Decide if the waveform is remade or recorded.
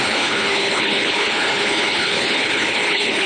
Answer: remade